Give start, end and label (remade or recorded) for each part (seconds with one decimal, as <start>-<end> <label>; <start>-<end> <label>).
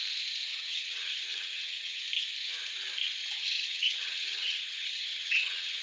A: 0.0-0.5 recorded; 0.5-2.0 remade; 2.0-3.2 recorded; 3.2-5.8 remade